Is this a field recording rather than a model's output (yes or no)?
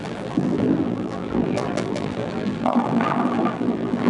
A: no